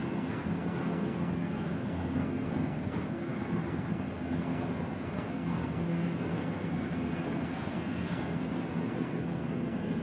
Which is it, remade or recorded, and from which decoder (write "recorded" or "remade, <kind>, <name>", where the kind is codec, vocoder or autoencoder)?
remade, codec, SNAC